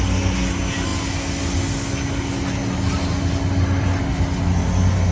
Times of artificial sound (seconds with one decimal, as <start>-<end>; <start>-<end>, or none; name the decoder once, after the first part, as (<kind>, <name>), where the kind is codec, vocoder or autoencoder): none